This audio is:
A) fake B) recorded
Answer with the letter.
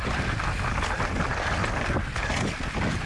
B